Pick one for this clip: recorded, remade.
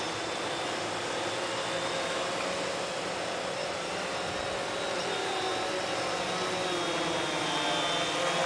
recorded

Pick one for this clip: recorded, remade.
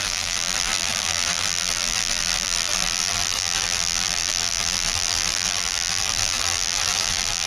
remade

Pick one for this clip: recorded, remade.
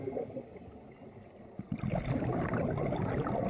recorded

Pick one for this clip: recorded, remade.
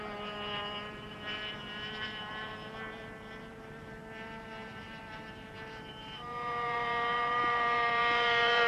remade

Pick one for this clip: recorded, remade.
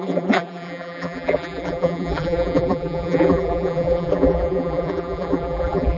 remade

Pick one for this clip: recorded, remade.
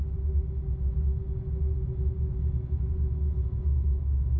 recorded